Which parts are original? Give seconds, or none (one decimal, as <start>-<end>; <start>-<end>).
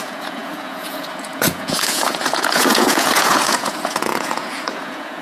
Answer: none